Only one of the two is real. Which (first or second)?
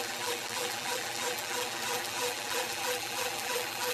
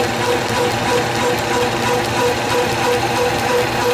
second